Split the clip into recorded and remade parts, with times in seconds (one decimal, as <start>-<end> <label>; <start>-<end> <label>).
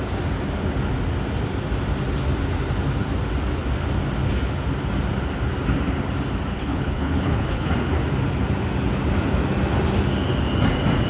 0.0-6.5 recorded; 6.5-7.7 remade; 7.7-11.1 recorded